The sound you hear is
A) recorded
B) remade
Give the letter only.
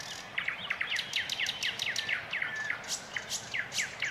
A